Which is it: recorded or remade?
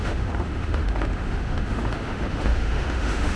remade